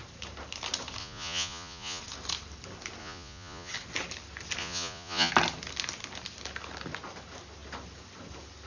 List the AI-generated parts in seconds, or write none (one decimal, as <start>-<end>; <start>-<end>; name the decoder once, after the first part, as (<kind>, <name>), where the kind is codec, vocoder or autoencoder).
1.0-2.0 (vocoder, Vocos); 3.0-3.7; 4.6-5.3